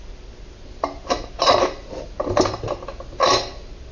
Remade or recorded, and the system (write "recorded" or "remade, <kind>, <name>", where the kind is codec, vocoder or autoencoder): recorded